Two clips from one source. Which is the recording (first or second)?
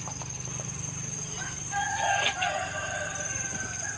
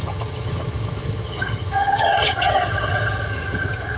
first